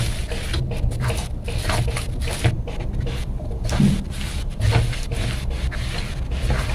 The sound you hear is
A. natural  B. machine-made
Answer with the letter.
A